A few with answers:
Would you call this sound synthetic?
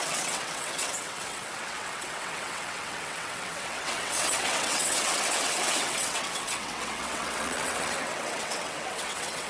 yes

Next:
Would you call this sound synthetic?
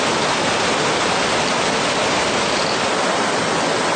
no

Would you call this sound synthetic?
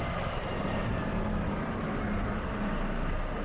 no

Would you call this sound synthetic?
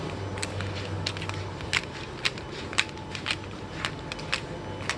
no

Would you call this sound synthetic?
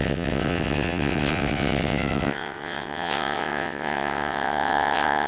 yes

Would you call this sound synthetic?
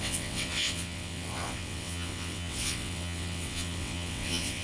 yes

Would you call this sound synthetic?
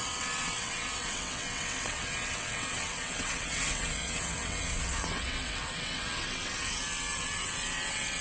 yes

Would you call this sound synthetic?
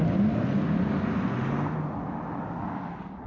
no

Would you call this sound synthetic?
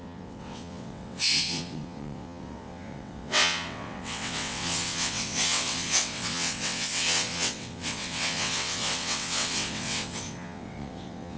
yes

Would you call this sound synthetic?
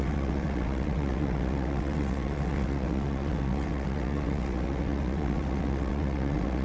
yes